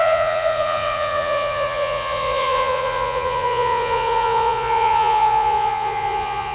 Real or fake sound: fake